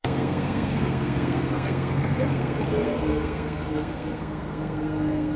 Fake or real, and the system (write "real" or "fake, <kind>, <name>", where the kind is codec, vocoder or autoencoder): fake, codec, SNAC